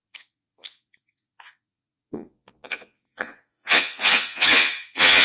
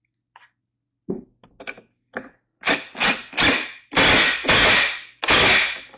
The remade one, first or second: first